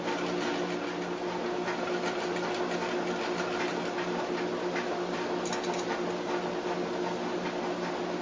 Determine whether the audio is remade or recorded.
recorded